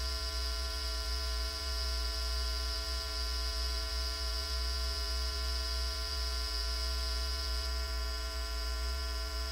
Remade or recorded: remade